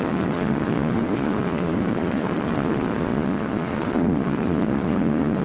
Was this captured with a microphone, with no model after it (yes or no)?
no